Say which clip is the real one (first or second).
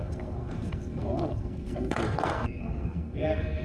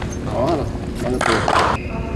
second